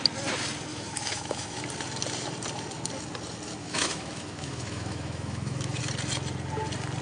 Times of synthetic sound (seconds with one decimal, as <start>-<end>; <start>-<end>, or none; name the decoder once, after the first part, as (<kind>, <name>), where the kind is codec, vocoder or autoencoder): 0.7-1.6 (autoencoder, DAC-VAE); 3.6-5.8